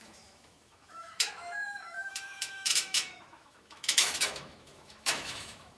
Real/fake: fake